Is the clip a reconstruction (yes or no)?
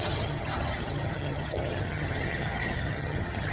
yes